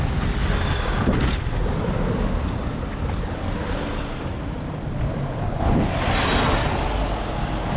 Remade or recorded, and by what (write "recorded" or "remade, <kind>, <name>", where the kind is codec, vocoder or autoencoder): recorded